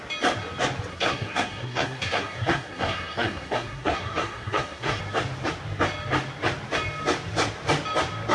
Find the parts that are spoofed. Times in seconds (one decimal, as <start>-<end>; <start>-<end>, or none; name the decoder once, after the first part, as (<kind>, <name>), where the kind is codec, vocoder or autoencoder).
0.9-5.0 (codec, SNAC)